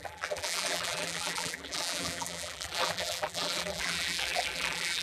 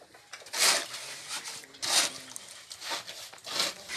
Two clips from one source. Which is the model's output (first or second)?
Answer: first